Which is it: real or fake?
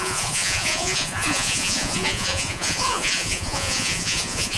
fake